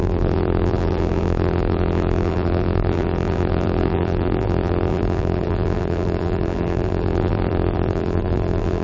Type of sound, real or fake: fake